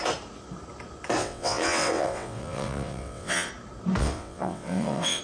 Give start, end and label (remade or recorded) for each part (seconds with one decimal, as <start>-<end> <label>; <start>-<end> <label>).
0.0-1.2 recorded; 1.2-3.5 remade; 3.5-4.0 recorded; 4.0-5.2 remade